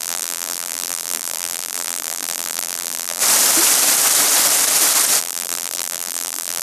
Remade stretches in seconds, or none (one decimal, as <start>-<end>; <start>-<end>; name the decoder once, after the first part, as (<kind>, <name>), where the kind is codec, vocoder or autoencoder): 0.0-3.2 (vocoder, BigVGAN v2); 5.2-6.6